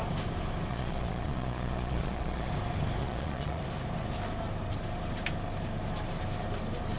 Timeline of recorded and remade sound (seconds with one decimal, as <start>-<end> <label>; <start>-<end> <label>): 0.0-0.7 recorded; 0.7-2.5 remade; 2.5-3.0 recorded; 3.0-3.6 remade; 3.6-7.0 recorded